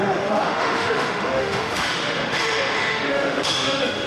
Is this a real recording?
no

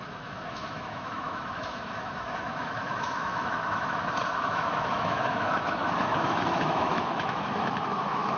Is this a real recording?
no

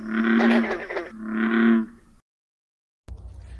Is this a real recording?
yes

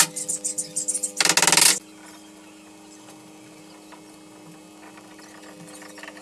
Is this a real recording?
yes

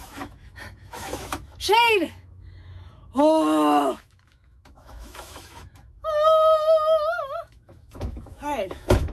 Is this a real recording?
no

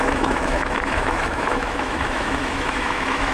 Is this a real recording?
no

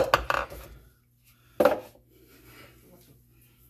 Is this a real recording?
yes